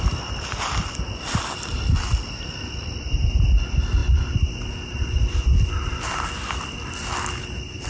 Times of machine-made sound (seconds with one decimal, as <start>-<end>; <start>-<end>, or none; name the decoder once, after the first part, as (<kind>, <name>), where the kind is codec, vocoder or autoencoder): none